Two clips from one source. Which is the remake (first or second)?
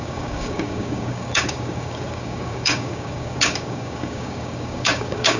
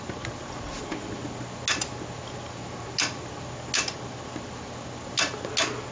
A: first